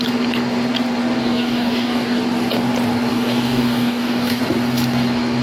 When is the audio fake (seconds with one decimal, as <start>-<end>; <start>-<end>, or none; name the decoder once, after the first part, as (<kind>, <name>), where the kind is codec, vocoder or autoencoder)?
1.2-2.2 (codec, DAC); 3.1-4.4